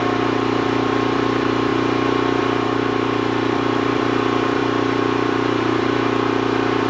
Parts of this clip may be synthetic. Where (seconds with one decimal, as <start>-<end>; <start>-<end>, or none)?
0.0-1.7; 2.4-6.9